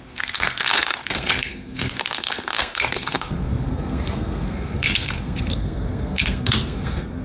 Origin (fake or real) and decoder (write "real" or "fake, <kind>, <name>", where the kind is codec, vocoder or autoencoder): fake, codec, SNAC